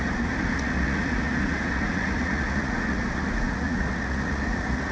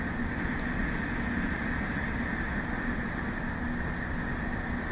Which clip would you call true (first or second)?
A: second